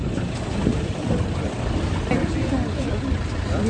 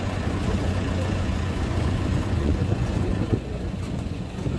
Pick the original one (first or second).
first